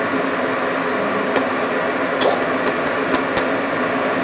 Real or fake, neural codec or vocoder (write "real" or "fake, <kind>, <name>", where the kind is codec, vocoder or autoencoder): real